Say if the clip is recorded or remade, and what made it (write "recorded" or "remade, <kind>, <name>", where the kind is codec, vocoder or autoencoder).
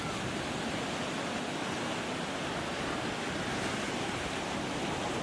recorded